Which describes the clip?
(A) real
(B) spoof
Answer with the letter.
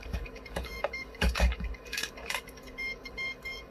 B